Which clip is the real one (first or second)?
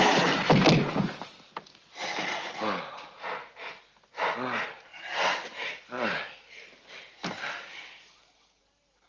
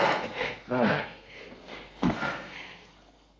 first